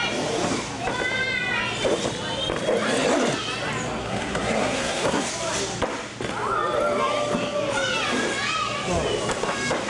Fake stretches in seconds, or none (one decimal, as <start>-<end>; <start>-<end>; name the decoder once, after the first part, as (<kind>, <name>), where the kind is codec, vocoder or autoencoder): 4.0-5.3 (codec, SNAC)